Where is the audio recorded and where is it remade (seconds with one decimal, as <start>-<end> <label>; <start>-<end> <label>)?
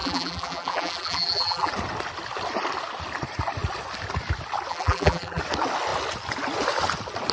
0.0-1.7 remade; 1.7-4.7 recorded; 4.7-5.4 remade; 5.4-7.3 recorded